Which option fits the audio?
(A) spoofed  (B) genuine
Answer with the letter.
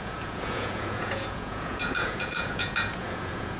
A